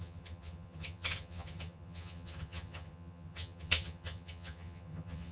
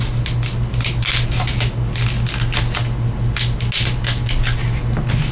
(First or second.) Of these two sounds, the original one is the second